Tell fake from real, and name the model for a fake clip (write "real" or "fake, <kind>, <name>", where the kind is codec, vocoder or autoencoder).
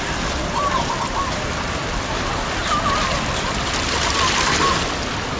real